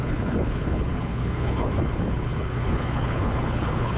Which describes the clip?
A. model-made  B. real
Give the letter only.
A